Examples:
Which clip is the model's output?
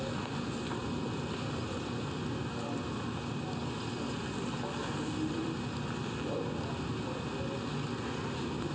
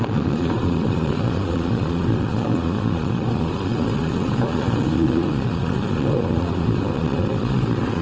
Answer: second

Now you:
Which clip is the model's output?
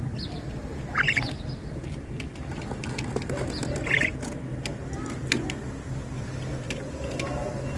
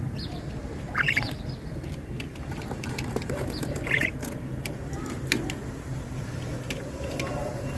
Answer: second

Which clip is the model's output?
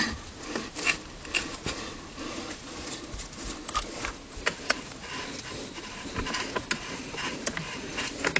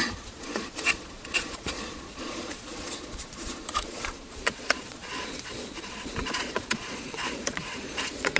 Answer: second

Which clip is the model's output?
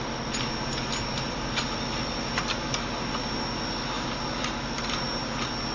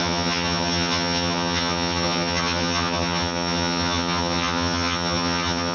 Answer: second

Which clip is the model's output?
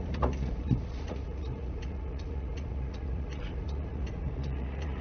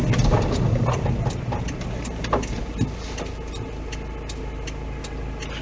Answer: first